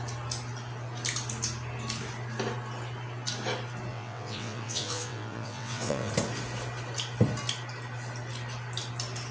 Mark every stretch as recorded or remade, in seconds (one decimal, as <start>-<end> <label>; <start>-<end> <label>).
0.0-3.9 recorded; 3.9-6.1 remade; 6.1-9.3 recorded